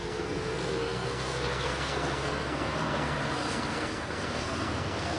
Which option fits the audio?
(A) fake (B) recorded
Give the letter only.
A